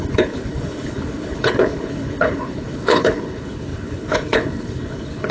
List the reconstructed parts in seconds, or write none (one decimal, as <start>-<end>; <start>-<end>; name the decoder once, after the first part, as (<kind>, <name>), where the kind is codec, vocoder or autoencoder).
0.0-5.3 (codec, HILCodec)